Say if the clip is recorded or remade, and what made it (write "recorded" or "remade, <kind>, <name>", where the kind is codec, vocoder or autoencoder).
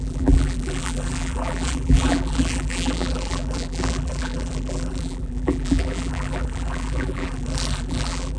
remade, vocoder, BigVGAN v2